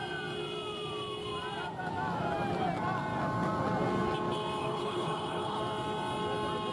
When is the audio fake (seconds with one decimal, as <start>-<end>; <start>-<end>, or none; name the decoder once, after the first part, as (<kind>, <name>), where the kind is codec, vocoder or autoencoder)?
4.6-5.6 (codec, HILCodec)